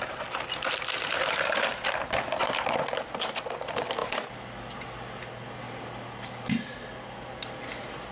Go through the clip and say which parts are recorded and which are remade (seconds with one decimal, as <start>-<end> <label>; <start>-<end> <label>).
0.0-8.1 recorded